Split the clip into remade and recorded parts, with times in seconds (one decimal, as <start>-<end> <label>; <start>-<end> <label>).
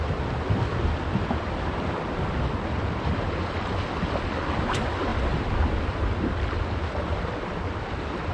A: 0.0-8.3 recorded